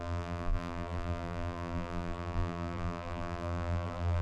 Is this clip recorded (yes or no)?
no